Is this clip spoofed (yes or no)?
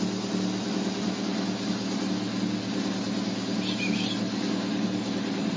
no